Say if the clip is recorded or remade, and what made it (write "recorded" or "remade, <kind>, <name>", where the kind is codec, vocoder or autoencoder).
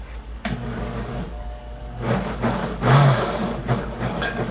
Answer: remade, codec, DAC